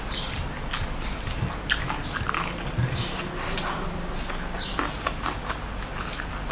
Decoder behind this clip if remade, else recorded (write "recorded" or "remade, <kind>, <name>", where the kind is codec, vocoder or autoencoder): recorded